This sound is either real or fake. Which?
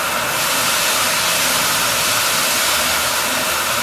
real